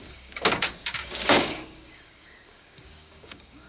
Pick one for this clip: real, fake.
fake